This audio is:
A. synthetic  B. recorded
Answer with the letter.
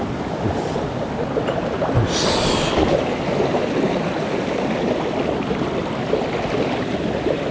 B